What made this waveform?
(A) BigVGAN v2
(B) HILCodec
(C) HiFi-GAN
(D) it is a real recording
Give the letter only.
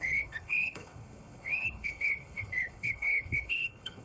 B